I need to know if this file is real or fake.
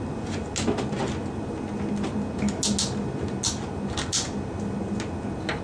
real